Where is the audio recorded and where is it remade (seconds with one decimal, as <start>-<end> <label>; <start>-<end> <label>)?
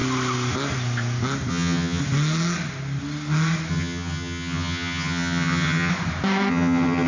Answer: 0.0-1.5 recorded; 1.5-2.0 remade; 2.0-3.7 recorded; 3.7-5.9 remade; 5.9-6.5 recorded; 6.5-7.1 remade